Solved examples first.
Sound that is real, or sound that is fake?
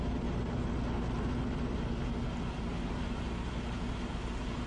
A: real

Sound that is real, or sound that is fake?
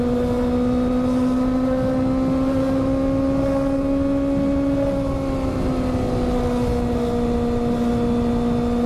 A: real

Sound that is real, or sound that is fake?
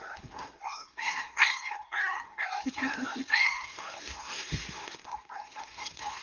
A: fake